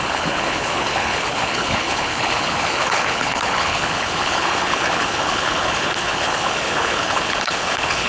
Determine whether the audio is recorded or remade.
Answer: remade